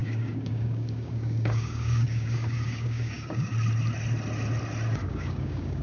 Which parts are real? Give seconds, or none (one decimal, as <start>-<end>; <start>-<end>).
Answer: 3.5-5.0